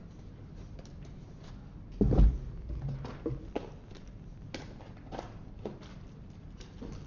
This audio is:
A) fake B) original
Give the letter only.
B